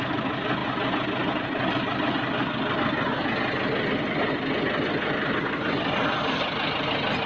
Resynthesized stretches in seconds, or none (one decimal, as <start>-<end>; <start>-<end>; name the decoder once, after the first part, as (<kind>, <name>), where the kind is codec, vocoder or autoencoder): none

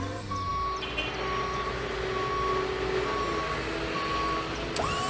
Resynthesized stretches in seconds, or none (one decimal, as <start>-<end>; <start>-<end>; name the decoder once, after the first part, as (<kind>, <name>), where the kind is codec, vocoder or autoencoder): none

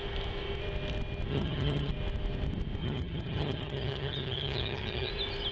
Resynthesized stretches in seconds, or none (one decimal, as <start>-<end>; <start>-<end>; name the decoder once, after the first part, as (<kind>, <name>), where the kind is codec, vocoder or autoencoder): 1.3-1.9 (vocoder, HiFi-GAN); 2.8-5.1